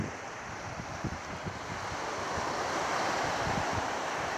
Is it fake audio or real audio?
fake